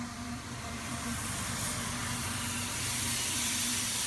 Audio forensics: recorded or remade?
remade